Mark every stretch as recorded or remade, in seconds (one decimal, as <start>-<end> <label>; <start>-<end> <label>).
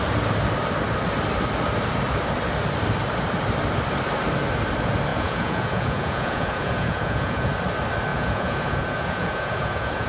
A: 0.0-5.1 recorded; 5.1-7.5 remade; 7.5-8.1 recorded; 8.1-10.1 remade